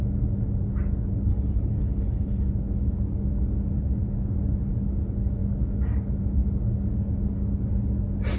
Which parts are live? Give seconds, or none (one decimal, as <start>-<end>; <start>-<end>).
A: 0.0-1.3; 2.5-8.4